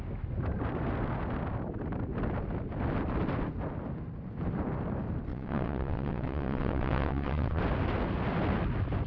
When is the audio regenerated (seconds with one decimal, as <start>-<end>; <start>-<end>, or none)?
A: 5.3-7.6